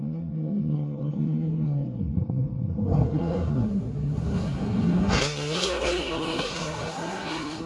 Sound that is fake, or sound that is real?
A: fake